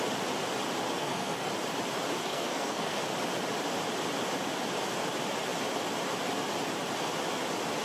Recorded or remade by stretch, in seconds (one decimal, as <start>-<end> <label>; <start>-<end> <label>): 0.0-1.0 recorded; 1.0-1.5 remade; 1.5-2.2 recorded; 2.2-3.0 remade; 3.0-7.8 recorded